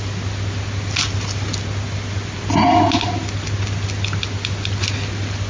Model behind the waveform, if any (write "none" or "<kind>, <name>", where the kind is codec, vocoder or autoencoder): none